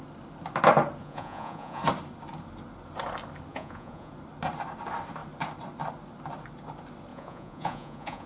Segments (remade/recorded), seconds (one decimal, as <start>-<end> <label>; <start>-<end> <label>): 0.0-1.0 recorded; 1.0-1.8 remade; 1.8-3.5 recorded; 3.5-4.1 remade; 4.1-7.1 recorded; 7.1-8.3 remade